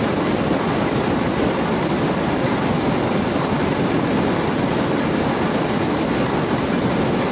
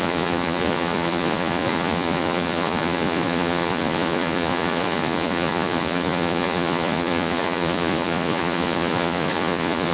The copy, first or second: second